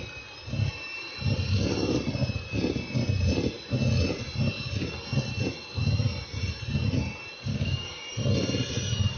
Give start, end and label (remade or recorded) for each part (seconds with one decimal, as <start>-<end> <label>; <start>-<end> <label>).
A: 0.0-7.5 recorded; 7.5-8.0 remade; 8.0-9.2 recorded